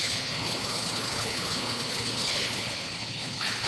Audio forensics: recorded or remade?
remade